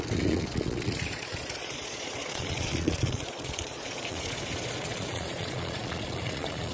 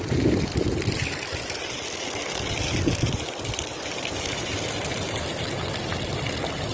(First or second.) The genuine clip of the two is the second